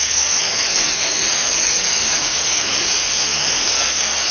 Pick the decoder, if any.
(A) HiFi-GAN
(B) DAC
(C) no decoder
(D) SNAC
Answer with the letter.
D